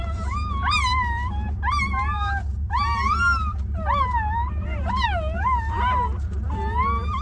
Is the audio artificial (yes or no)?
no